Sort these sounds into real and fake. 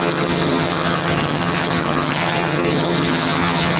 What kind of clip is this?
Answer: fake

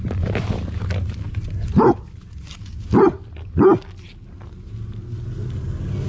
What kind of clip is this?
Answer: real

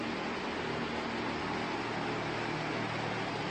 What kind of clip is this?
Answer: real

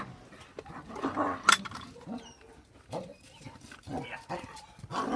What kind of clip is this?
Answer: real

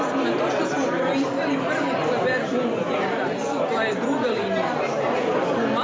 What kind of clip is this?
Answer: real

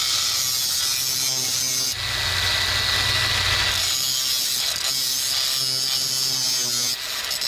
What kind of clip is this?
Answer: real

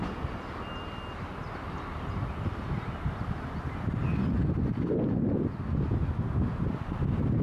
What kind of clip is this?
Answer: real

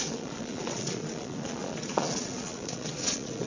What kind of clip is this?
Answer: fake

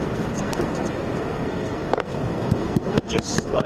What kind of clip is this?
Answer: fake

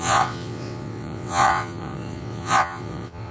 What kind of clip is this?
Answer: fake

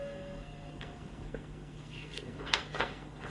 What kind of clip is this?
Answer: fake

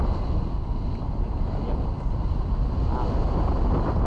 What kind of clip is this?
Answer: real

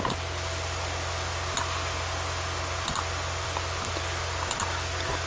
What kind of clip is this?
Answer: real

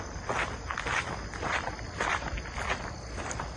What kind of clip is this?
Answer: real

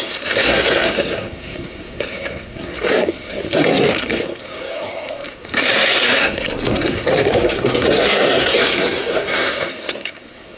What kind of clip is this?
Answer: fake